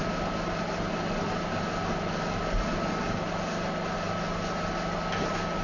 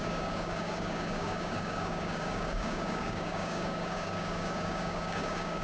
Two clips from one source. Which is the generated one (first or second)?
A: second